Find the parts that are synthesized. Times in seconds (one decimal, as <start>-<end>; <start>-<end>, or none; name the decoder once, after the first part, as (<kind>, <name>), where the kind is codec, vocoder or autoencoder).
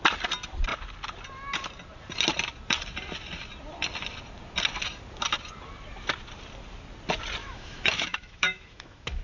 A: 7.4-9.2 (autoencoder, DAC-VAE)